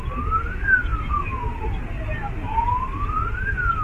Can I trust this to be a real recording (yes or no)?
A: yes